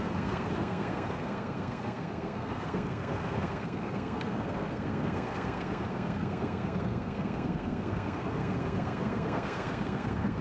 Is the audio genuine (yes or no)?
no